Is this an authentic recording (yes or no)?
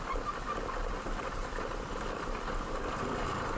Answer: no